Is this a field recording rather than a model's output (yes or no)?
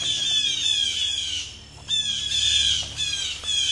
yes